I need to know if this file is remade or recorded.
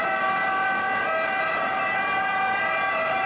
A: recorded